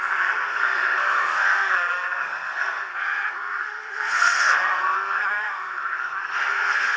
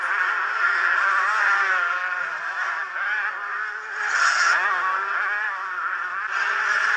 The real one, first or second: second